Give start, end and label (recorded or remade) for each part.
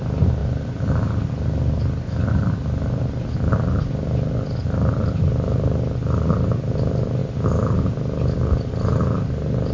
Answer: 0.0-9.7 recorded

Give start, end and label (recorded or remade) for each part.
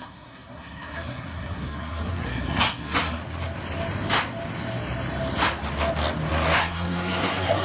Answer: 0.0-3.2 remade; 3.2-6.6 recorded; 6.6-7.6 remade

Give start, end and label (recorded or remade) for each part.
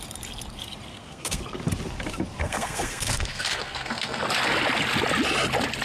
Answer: 0.0-0.9 recorded; 0.9-1.4 remade; 1.4-2.4 recorded; 2.4-4.2 remade; 4.2-5.8 recorded